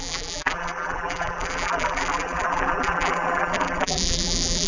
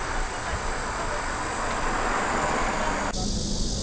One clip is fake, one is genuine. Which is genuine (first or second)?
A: second